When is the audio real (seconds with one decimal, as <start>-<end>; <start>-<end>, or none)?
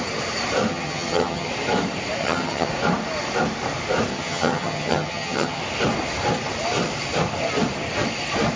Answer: 0.0-0.7; 1.5-2.2; 2.7-4.1; 5.6-8.6